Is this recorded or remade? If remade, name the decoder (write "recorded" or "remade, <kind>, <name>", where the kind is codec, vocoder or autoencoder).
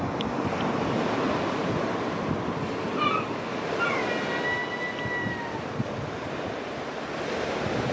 recorded